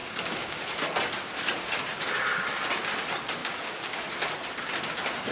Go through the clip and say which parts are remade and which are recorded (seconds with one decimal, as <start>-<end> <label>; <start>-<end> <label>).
0.0-0.6 remade; 0.6-3.4 recorded; 3.4-4.0 remade; 4.0-5.3 recorded